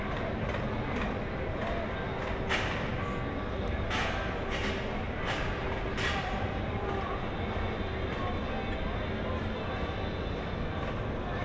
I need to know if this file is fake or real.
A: real